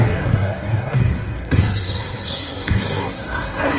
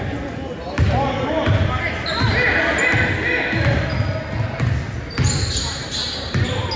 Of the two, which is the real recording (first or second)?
second